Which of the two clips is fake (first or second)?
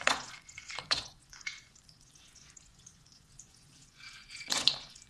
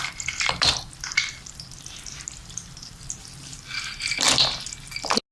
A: first